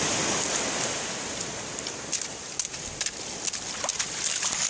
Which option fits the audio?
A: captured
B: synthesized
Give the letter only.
A